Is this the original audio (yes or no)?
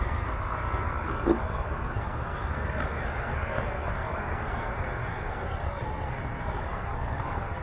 no